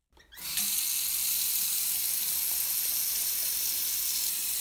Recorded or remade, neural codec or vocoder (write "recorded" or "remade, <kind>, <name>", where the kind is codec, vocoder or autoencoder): recorded